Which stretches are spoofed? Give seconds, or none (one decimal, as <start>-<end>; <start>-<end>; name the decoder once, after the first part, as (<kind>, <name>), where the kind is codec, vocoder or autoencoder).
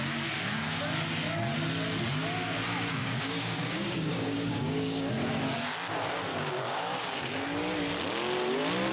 3.0-5.1 (codec, DAC); 6.3-7.3